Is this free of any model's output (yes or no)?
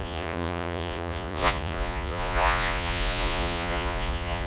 no